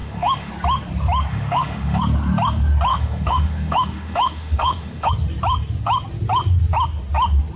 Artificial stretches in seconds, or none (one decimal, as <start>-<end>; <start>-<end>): 0.0-0.5; 1.3-2.0; 2.9-5.1